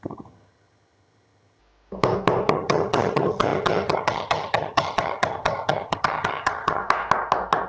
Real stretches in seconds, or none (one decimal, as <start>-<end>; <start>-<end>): 1.6-2.5; 6.8-7.7